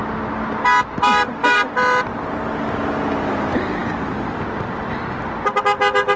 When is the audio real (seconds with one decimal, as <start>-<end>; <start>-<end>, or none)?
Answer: 0.0-6.2